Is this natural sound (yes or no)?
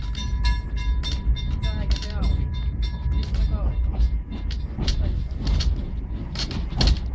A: yes